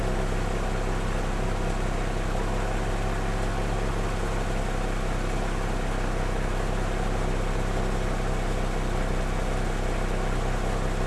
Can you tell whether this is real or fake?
real